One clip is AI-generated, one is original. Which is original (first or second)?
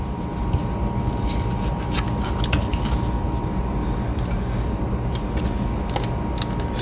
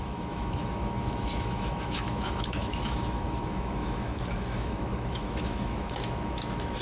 first